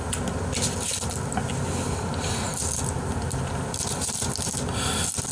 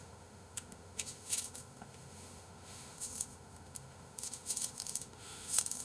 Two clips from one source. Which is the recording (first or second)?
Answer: first